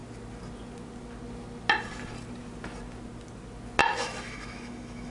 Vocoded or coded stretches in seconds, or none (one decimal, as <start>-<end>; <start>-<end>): 3.8-5.1